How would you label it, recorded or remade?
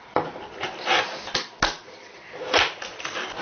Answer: recorded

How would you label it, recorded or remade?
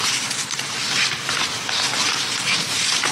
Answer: recorded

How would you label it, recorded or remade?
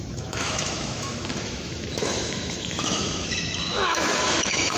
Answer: remade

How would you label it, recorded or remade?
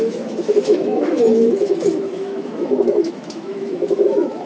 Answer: remade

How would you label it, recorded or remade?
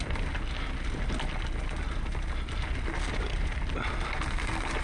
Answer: recorded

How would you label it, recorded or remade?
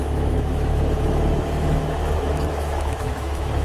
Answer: remade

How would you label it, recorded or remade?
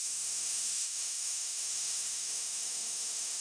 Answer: remade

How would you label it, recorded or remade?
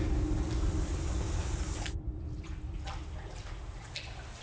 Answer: recorded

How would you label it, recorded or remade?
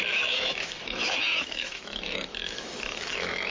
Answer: remade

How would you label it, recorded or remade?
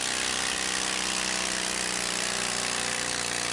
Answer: recorded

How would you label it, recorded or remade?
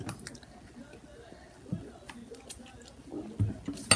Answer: recorded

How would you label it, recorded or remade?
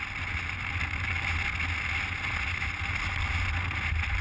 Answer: recorded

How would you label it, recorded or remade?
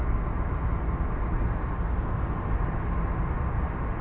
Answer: recorded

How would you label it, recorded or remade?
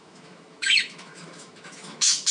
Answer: remade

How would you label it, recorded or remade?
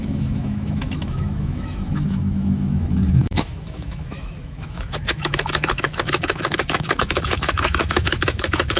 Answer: remade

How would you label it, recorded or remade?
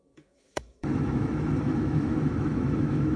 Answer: remade